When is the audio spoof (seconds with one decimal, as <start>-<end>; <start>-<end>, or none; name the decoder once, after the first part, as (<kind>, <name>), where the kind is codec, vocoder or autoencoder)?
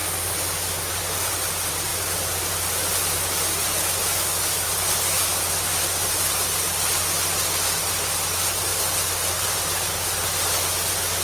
none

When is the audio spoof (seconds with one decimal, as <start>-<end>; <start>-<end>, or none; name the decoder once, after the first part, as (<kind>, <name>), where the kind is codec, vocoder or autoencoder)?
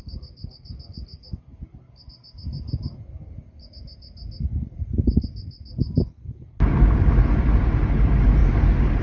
none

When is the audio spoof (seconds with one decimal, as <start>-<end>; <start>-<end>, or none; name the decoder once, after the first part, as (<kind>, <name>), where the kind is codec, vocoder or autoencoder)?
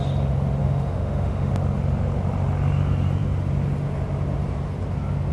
0.6-1.5 (autoencoder, DAC-VAE)